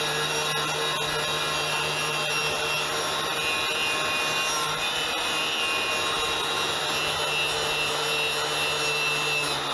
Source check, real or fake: real